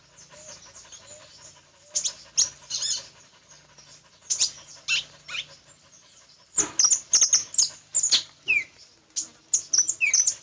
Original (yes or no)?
yes